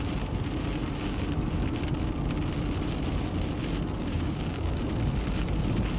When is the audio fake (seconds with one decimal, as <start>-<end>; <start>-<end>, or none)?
4.0-4.9